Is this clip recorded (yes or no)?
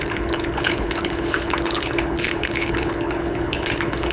no